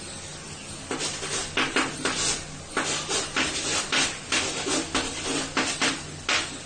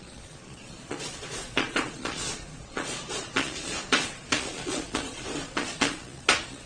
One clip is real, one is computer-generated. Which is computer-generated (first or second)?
second